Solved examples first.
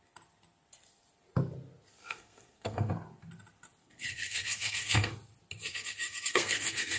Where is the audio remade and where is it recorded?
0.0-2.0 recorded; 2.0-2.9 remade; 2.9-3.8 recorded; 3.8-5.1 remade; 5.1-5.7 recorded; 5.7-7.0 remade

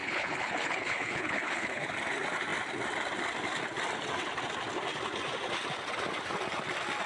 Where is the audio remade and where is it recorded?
0.0-1.9 remade; 1.9-7.1 recorded

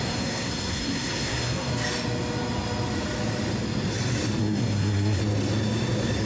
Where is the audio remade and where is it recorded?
0.0-1.7 remade; 1.7-4.4 recorded; 4.4-5.2 remade; 5.2-6.3 recorded